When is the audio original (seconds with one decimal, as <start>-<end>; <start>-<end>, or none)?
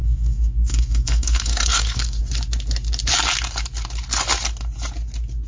2.2-5.5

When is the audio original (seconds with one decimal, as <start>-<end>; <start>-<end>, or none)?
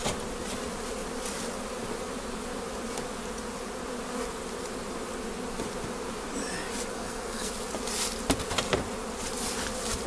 0.0-6.9; 7.5-10.1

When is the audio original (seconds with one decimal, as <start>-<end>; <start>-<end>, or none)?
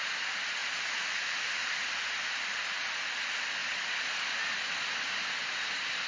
0.0-6.1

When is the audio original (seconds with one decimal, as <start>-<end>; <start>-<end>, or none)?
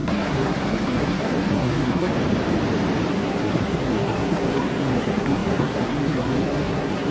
2.1-3.1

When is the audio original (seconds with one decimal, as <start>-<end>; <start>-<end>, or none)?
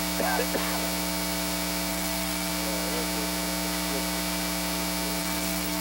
0.0-1.9; 2.5-5.2